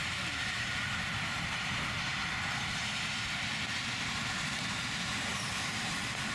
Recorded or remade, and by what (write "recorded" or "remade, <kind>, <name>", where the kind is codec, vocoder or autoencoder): recorded